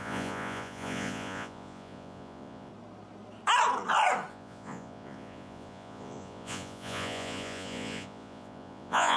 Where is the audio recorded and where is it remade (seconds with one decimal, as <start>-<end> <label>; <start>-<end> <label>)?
0.0-2.7 remade; 2.7-4.3 recorded; 4.3-9.2 remade